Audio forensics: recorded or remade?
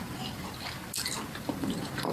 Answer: recorded